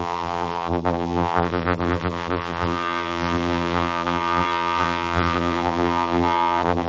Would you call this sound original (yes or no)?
no